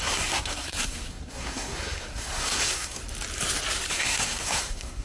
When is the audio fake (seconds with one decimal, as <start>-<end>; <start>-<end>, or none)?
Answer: 0.0-3.0; 3.9-5.0